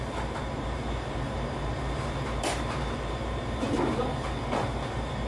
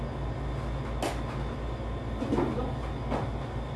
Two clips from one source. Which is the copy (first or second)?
first